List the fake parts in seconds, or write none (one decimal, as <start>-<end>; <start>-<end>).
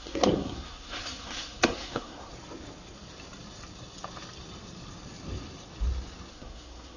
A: 0.0-2.3; 6.3-7.0